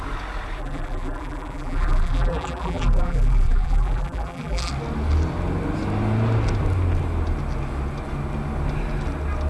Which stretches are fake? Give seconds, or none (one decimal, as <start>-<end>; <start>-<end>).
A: 0.6-4.7